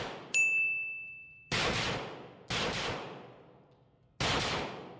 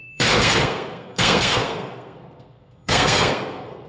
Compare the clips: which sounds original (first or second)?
first